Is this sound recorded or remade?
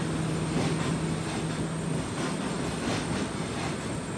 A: recorded